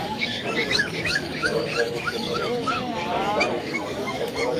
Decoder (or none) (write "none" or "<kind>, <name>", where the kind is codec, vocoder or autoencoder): codec, DAC